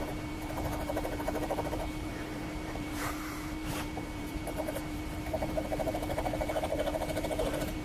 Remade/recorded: remade